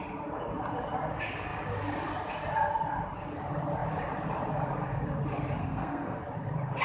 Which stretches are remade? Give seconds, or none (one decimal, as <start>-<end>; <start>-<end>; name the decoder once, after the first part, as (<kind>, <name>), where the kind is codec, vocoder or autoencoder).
5.6-6.2 (codec, SNAC)